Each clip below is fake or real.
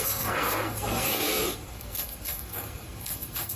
fake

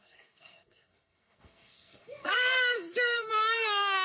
fake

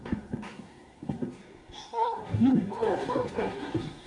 fake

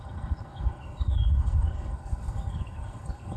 fake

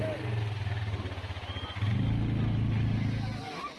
real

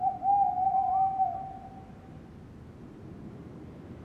real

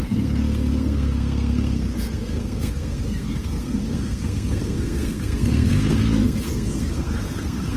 fake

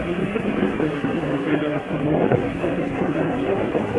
fake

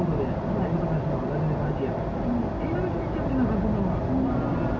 real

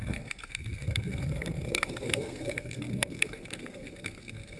fake